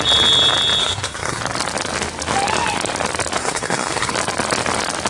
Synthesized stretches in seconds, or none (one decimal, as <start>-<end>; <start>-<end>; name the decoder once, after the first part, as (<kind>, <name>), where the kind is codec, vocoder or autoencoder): 0.8-1.4 (codec, SNAC); 3.4-4.1